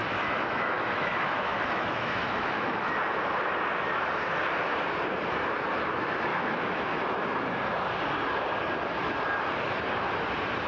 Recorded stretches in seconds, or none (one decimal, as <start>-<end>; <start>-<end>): 3.0-6.3; 7.0-10.7